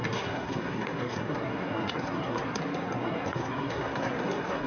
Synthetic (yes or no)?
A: yes